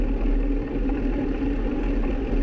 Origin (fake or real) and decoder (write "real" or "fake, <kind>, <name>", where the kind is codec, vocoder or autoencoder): real